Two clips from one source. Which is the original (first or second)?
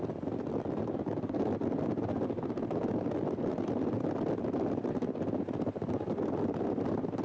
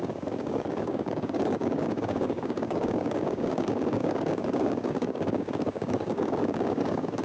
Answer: first